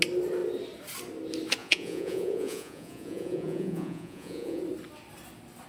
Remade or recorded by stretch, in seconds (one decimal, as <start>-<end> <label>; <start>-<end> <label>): 0.0-1.6 recorded; 1.6-4.6 remade; 4.6-5.7 recorded